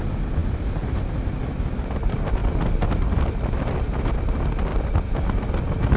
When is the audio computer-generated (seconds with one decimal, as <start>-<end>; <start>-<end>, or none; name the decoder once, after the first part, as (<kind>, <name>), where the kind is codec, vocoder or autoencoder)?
none